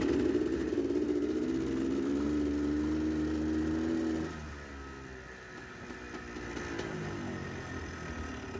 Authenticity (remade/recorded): recorded